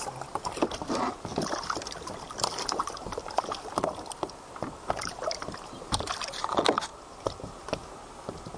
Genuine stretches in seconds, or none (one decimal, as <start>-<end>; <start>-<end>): 0.0-1.3; 3.8-6.9; 7.5-8.6